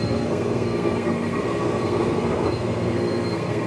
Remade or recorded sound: remade